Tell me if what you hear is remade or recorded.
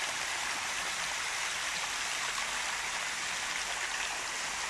recorded